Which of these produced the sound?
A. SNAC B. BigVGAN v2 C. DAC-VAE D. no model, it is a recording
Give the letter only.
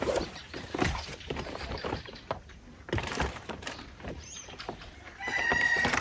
B